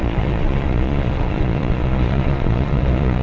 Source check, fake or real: fake